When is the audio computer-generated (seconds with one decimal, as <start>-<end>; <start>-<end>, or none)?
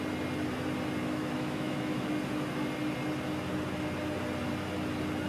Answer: 1.0-2.1